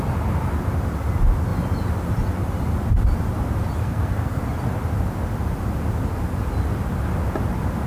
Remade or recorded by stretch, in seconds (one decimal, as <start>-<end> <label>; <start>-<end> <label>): 0.0-3.8 recorded; 3.8-4.4 remade; 4.4-7.9 recorded